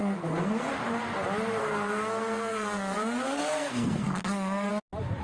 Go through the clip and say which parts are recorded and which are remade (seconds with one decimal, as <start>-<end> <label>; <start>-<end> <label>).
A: 0.0-0.7 remade; 0.7-1.6 recorded; 1.6-4.7 remade; 4.7-5.2 recorded